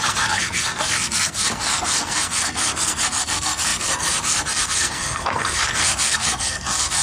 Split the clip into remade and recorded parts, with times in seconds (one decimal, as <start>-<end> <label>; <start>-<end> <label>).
0.0-7.0 remade